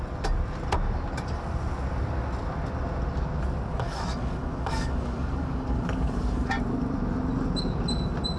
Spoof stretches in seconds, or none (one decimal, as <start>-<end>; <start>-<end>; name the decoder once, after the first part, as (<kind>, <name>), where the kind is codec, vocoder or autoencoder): 3.7-6.5 (codec, DAC)